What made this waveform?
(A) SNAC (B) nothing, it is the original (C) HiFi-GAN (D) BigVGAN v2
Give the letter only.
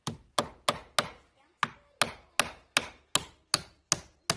B